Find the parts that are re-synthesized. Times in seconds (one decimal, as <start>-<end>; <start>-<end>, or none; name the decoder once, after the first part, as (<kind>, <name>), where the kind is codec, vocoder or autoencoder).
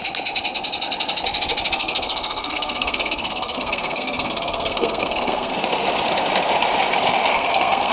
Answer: 1.8-5.5 (codec, SNAC); 7.3-7.9